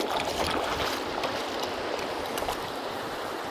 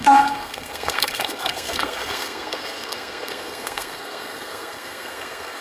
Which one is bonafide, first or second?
first